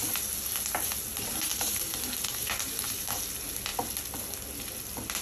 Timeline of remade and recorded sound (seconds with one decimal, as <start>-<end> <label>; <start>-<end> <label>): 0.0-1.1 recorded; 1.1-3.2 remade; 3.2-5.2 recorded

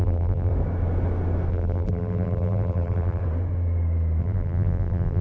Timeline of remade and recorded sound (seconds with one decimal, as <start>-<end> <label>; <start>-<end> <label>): 0.0-0.5 remade; 0.5-1.5 recorded; 1.5-3.2 remade; 3.2-4.2 recorded; 4.2-5.2 remade

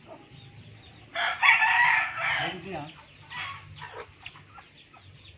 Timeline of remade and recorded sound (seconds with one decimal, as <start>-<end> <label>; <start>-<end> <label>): 0.0-1.1 recorded; 1.1-4.3 remade; 4.3-5.4 recorded

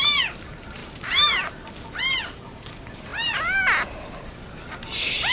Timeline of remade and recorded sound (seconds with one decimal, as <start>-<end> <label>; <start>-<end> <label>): 0.0-0.8 recorded; 0.8-1.7 remade; 1.7-5.3 recorded